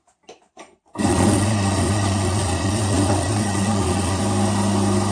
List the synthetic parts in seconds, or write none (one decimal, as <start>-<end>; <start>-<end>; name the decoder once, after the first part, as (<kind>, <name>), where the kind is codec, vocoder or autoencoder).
1.1-4.2 (vocoder, Vocos)